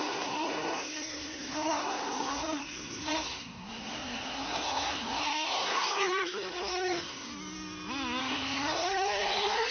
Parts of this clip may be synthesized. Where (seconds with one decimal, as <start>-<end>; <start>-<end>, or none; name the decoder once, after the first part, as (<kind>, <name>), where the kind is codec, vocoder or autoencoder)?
0.0-7.3 (codec, SNAC); 8.2-9.7